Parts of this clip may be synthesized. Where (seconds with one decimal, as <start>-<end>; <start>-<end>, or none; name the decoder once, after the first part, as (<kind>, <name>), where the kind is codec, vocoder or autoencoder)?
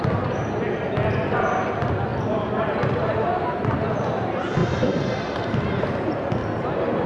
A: 2.1-3.0 (vocoder, BigVGAN v2); 4.6-5.8; 6.4-7.1